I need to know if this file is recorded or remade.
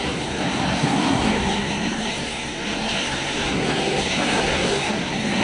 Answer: remade